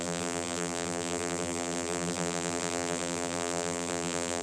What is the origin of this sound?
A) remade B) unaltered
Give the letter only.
A